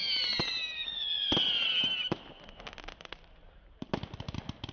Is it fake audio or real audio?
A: real